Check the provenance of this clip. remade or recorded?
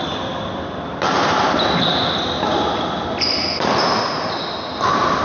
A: recorded